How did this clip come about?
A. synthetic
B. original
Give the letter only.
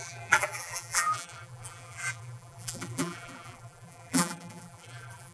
A